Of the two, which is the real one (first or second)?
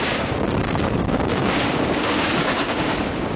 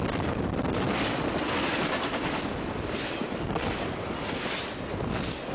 second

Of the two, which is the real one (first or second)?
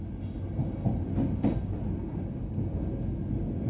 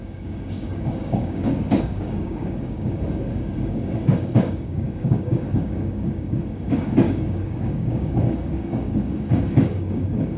first